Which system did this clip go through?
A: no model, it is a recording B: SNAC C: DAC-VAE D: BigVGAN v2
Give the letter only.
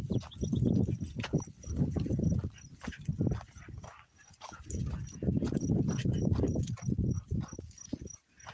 A